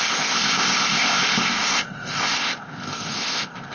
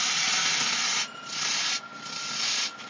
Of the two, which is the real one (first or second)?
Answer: second